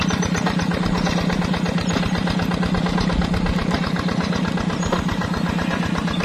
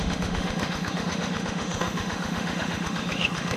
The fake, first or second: second